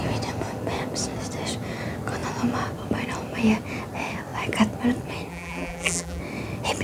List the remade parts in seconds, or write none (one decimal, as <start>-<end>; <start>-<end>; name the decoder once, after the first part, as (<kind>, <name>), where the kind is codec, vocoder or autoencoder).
5.3-6.2 (vocoder, BigVGAN v2)